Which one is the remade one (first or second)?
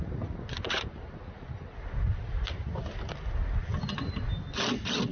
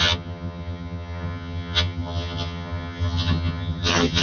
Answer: second